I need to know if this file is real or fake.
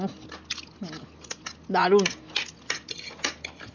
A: real